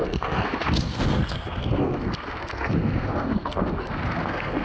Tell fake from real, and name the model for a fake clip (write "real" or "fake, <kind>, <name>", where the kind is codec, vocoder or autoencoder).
fake, codec, SNAC